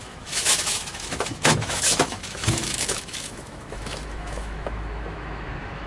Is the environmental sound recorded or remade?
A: remade